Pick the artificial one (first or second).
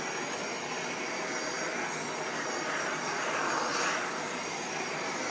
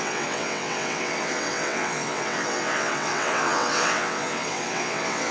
second